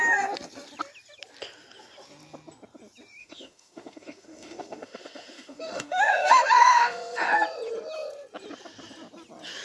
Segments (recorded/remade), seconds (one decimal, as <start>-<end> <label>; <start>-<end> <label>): 0.0-3.2 recorded; 3.2-7.3 remade; 7.3-9.6 recorded